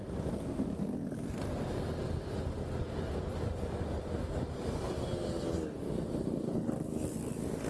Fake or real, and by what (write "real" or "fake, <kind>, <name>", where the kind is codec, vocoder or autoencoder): real